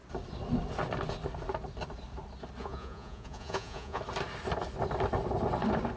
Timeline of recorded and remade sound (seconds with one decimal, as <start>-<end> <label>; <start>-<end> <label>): 0.0-2.6 recorded; 2.6-4.0 remade; 4.0-6.0 recorded